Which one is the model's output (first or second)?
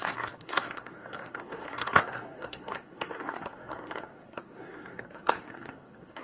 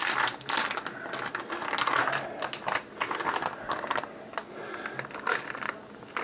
first